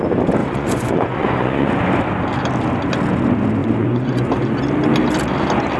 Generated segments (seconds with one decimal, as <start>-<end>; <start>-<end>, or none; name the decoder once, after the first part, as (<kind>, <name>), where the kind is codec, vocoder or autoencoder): 0.4-1.8 (vocoder, Vocos); 3.6-4.3